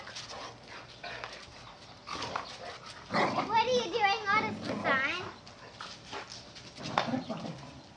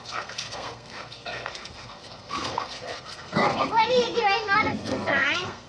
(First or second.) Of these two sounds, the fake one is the second